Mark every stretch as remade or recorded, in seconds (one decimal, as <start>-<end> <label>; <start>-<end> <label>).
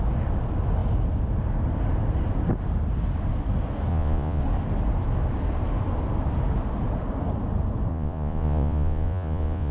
0.0-3.9 recorded; 3.9-4.4 remade; 4.4-7.9 recorded; 7.9-9.7 remade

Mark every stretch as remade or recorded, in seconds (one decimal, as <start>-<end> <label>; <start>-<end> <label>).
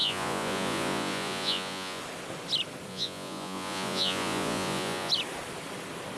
0.0-2.0 remade; 2.0-2.9 recorded; 2.9-5.1 remade; 5.1-6.2 recorded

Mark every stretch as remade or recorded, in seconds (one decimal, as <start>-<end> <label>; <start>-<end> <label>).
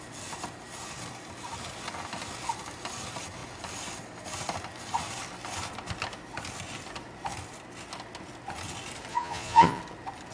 0.0-9.1 recorded; 9.1-9.8 remade; 9.8-10.3 recorded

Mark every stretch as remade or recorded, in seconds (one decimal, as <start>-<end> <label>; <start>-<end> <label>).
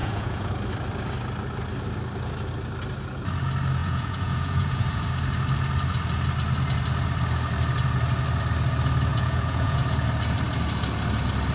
0.0-0.5 remade; 0.5-3.8 recorded; 3.8-5.0 remade; 5.0-9.1 recorded; 9.1-9.8 remade; 9.8-11.5 recorded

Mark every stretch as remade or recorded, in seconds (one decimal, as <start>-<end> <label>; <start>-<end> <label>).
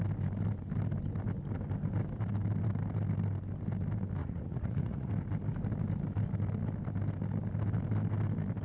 0.0-4.2 recorded; 4.2-5.1 remade; 5.1-8.6 recorded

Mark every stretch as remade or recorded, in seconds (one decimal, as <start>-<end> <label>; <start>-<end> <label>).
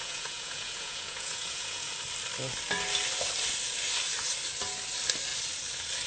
0.0-1.9 remade; 1.9-6.1 recorded